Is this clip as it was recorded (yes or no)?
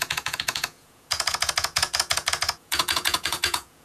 no